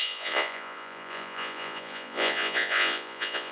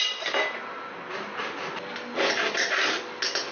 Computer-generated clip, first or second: first